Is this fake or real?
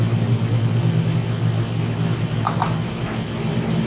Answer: real